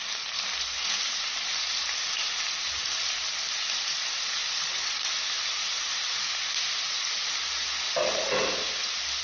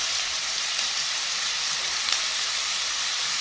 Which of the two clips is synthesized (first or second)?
second